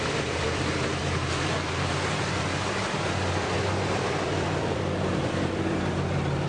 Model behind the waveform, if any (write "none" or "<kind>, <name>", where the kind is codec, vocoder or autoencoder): vocoder, BigVGAN v2